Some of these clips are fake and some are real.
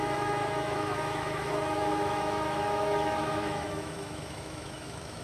fake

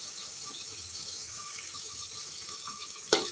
fake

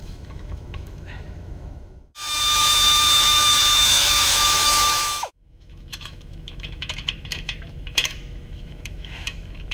fake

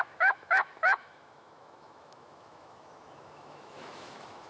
fake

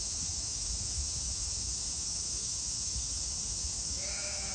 fake